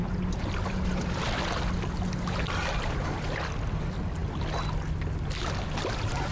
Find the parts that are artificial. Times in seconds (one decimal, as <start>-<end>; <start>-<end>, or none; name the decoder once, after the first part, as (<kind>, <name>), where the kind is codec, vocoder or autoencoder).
none